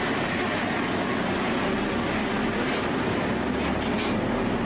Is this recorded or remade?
recorded